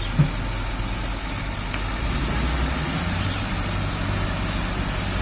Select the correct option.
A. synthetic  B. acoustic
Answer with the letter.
B